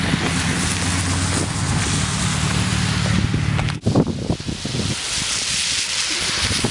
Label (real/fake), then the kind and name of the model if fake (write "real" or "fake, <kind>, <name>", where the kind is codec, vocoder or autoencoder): real